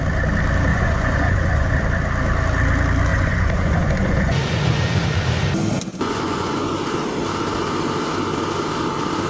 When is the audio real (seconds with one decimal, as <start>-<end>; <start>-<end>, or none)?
0.0-0.7; 1.8-3.1; 5.4-5.9; 6.7-9.3